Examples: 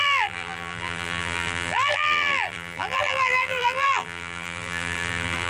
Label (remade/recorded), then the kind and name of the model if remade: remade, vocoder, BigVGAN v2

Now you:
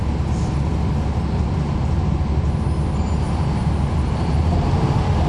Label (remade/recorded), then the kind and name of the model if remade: recorded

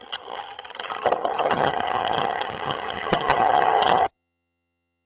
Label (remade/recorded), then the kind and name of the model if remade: remade, vocoder, HiFi-GAN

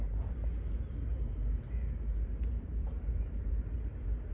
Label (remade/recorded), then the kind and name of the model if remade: remade, vocoder, BigVGAN v2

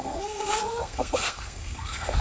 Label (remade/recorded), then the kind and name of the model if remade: remade, codec, SNAC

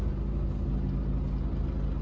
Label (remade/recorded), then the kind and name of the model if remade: recorded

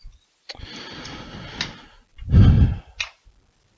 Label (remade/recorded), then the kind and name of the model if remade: recorded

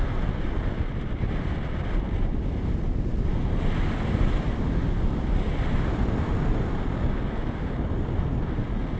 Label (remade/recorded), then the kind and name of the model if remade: recorded